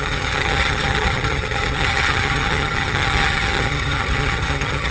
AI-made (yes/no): yes